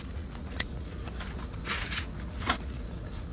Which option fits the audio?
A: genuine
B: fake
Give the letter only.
B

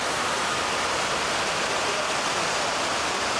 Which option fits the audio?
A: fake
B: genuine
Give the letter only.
B